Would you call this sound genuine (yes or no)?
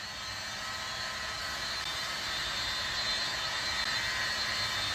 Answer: yes